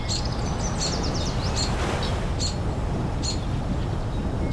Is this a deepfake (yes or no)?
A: no